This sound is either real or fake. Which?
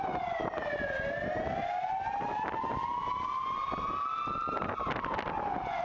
real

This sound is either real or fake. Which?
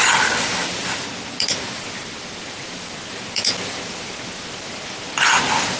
real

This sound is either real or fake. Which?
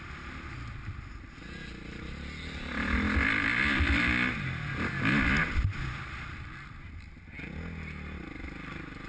real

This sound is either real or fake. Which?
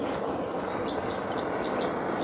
real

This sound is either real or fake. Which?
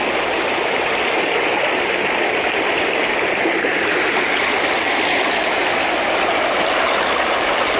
real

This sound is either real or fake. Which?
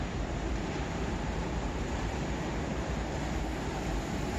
fake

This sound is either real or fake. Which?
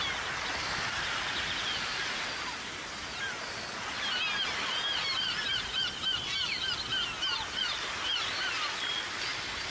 real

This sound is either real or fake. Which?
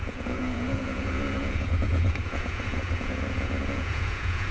fake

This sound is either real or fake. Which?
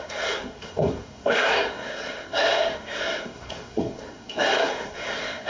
fake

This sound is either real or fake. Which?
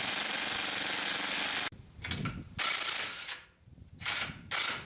real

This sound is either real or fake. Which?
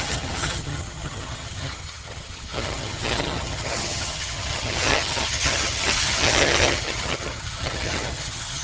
fake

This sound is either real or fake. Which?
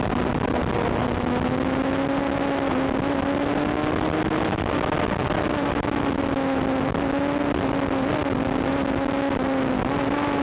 real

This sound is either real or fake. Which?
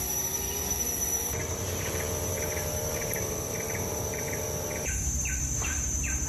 fake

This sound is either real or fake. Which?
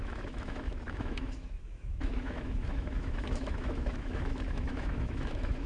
fake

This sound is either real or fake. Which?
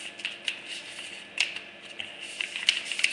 real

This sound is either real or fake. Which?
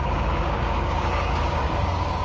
fake